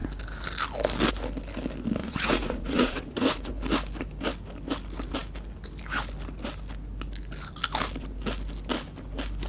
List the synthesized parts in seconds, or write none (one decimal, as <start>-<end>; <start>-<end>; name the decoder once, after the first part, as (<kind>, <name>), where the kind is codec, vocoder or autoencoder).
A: 2.0-3.5 (vocoder, Vocos)